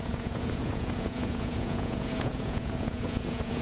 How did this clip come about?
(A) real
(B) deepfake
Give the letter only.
B